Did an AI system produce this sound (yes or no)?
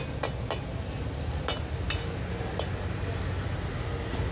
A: no